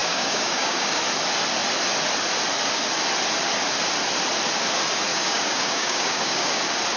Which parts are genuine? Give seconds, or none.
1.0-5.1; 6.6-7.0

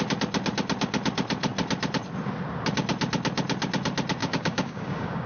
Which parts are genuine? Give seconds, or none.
0.0-4.2